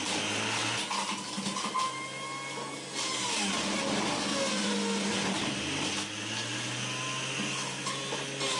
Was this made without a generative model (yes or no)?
yes